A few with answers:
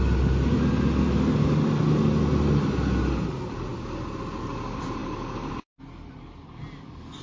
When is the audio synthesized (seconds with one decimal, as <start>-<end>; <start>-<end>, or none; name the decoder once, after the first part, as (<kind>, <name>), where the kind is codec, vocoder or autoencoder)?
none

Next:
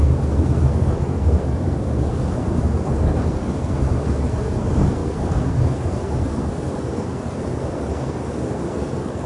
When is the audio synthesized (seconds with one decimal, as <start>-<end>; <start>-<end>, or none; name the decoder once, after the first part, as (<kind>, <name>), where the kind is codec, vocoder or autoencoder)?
0.0-9.3 (codec, SNAC)

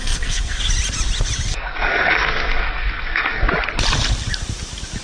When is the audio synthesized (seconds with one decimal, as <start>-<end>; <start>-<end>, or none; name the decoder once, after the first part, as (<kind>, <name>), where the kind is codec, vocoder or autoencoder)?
0.0-0.6 (codec, SNAC); 1.5-3.5

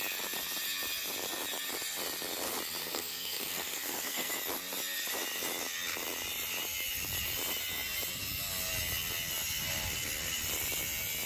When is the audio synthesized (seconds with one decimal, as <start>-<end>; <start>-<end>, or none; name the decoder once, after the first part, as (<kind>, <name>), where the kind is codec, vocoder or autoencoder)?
2.8-4.3 (codec, SNAC)

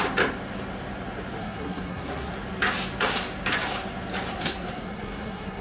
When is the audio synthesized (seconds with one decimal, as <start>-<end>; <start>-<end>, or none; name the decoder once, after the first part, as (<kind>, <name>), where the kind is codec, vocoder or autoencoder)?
1.4-2.3 (codec, SNAC); 4.3-5.6

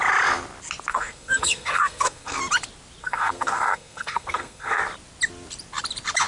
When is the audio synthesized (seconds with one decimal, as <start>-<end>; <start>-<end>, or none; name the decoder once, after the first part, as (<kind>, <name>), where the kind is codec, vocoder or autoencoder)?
0.9-2.4 (codec, SNAC); 3.0-4.8

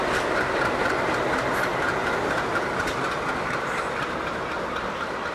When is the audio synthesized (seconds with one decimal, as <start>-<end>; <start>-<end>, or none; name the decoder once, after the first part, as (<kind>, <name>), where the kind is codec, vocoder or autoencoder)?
none